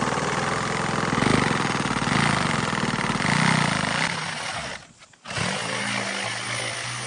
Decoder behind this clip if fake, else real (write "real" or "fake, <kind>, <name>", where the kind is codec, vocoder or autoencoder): real